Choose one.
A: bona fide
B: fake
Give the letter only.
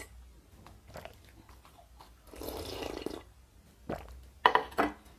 A